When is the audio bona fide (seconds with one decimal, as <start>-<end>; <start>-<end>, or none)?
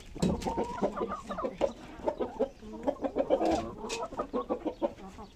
0.0-5.4